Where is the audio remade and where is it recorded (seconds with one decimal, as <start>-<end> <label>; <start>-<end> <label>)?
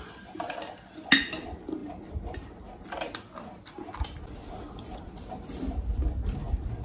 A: 0.0-6.8 recorded